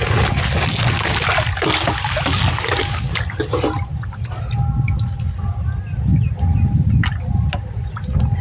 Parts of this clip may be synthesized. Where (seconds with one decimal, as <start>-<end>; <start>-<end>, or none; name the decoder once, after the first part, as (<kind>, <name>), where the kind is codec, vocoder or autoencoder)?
none